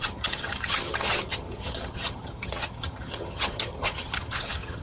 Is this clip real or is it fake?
fake